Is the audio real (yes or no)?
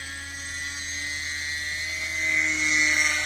yes